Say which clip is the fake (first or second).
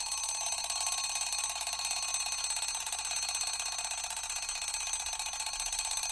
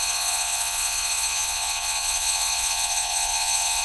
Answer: second